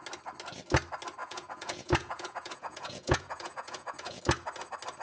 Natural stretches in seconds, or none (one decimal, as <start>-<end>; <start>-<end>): 0.0-1.2; 4.2-5.0